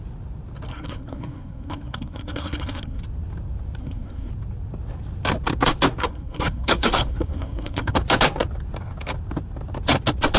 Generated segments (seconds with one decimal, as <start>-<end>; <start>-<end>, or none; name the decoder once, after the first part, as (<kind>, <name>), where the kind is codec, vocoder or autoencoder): 0.7-3.0 (codec, SNAC); 3.8-4.3; 6.0-7.9